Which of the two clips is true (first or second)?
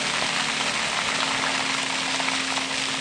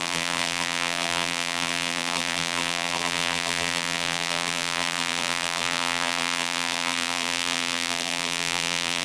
first